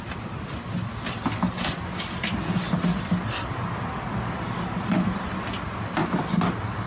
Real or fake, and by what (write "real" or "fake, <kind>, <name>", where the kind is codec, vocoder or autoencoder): real